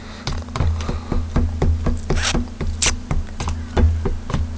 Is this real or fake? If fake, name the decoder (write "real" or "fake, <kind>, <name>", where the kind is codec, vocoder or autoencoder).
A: real